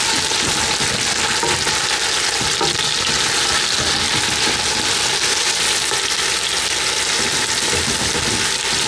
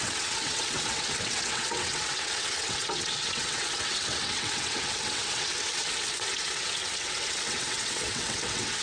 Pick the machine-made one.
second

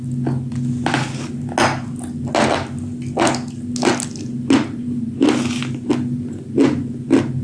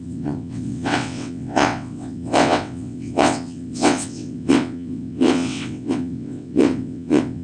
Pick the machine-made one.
second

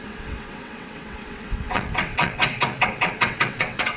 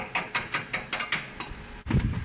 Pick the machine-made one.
first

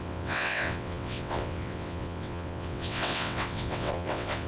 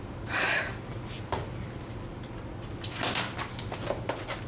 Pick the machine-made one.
first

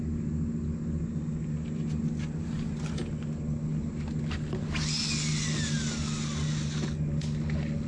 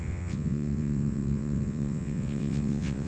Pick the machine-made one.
second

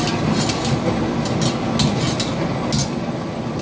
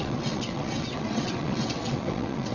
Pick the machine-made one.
second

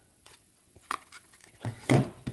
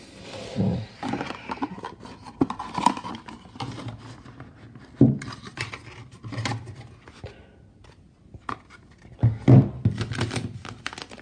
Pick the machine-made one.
first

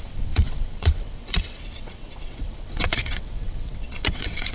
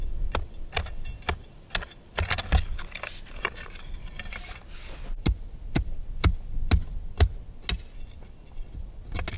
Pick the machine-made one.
first